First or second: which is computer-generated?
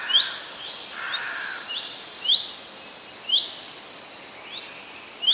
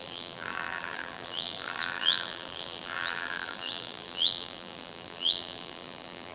second